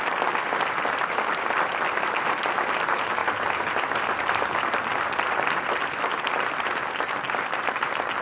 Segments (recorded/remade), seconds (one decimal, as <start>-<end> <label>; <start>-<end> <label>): 0.0-3.2 recorded; 3.2-6.6 remade; 6.6-8.2 recorded